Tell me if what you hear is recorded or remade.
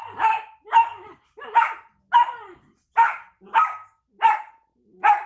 recorded